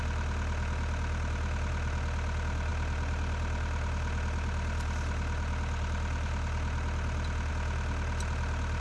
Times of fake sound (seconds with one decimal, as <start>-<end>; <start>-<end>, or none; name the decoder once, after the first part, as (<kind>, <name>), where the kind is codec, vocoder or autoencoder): none